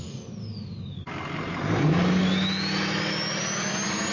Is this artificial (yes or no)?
no